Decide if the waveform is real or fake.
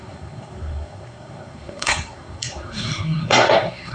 fake